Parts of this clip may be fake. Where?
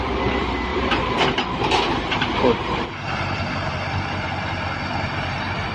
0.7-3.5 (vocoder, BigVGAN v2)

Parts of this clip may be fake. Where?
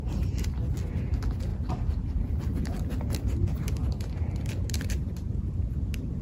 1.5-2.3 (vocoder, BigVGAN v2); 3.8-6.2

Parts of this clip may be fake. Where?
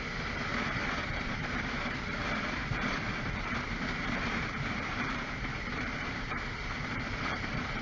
0.0-0.5 (vocoder, BigVGAN v2); 1.0-7.8